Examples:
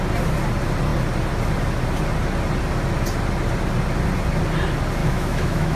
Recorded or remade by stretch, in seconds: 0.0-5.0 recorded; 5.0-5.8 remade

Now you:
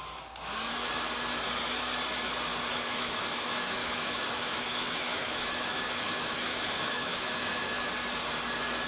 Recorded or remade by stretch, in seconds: 0.0-2.7 recorded; 2.7-7.9 remade; 7.9-8.9 recorded

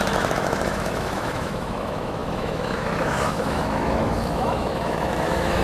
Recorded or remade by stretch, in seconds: 0.0-5.6 remade